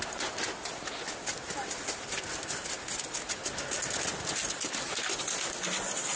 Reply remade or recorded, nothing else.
recorded